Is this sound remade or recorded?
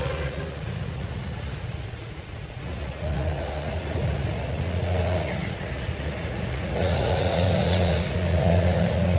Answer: remade